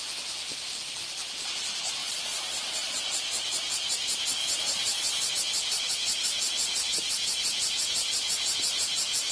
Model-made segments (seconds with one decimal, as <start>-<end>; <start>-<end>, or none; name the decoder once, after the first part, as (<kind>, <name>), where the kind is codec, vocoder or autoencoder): 2.0-3.0 (vocoder, Vocos); 4.4-5.3